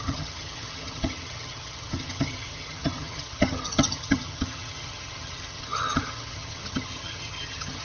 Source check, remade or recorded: remade